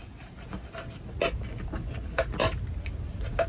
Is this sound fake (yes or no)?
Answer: no